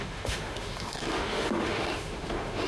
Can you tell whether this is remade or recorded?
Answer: remade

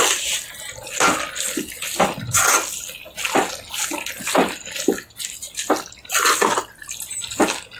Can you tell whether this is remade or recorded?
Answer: recorded